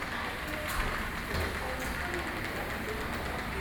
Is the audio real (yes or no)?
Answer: yes